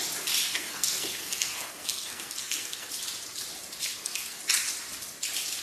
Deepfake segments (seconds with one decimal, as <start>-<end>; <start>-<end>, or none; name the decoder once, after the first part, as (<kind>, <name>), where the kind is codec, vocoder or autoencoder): 0.5-2.9 (codec, SNAC); 3.9-4.4